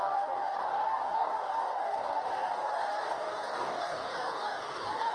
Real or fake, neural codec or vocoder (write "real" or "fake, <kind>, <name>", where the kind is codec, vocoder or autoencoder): fake, codec, DAC